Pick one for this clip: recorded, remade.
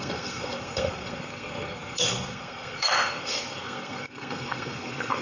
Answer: remade